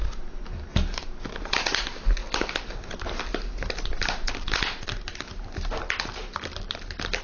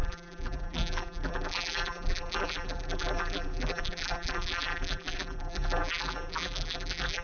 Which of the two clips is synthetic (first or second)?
second